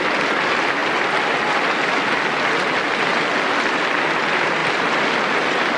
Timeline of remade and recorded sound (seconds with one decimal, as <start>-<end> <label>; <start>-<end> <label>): 0.0-5.8 recorded